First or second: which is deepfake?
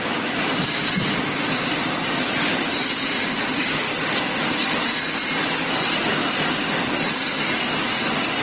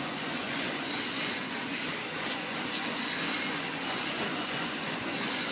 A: second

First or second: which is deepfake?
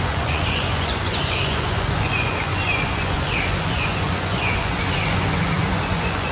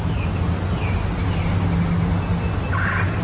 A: first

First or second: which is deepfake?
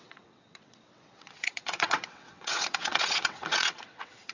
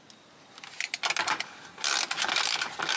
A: first